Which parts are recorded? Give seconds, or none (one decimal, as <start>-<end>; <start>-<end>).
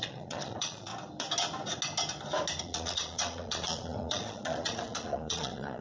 0.9-2.6